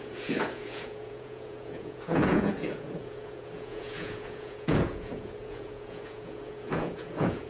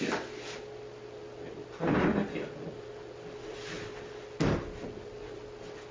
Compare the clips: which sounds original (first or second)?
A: second